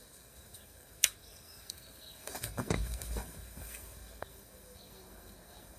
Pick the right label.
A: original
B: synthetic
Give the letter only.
B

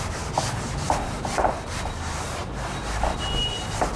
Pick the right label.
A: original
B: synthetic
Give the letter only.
B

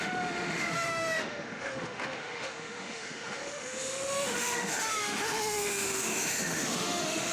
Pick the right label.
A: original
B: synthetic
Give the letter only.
B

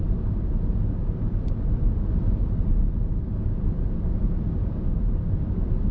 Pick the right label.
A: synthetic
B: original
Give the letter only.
B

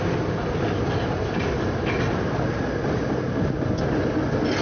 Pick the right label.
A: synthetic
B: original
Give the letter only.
B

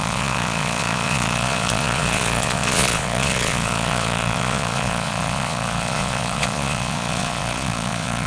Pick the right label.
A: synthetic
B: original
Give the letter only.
A